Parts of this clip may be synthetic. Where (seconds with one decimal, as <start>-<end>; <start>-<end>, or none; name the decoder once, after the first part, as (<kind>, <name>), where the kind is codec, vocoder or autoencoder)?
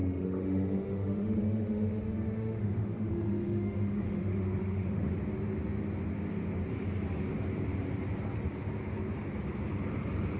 0.0-5.1 (autoencoder, DAC-VAE)